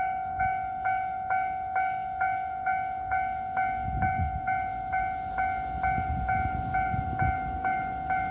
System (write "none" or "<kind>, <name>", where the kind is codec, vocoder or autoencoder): autoencoder, DAC-VAE